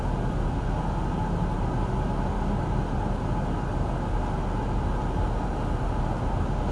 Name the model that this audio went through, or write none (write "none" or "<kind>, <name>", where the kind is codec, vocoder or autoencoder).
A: none